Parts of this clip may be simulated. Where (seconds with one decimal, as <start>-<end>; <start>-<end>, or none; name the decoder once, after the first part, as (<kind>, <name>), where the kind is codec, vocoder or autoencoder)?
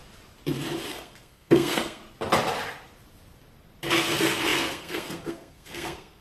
0.9-2.0 (codec, SNAC); 3.9-6.2